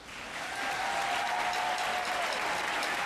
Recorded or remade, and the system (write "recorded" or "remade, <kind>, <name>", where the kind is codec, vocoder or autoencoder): recorded